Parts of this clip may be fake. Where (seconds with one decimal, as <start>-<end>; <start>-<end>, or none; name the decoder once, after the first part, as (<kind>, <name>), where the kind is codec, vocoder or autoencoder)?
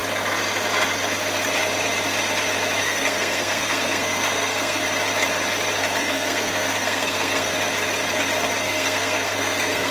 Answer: 2.8-4.8 (codec, SNAC); 6.0-7.5; 8.6-9.9